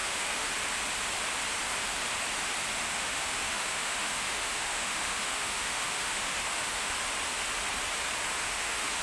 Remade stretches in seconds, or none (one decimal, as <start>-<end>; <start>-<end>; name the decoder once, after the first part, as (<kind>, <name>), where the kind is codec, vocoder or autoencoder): 0.0-0.5 (autoencoder, DAC-VAE); 2.9-6.9; 8.3-9.0